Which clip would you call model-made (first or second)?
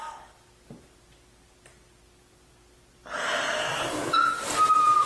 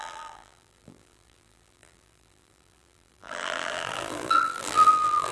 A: second